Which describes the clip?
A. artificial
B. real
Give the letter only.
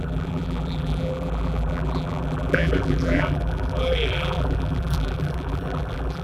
A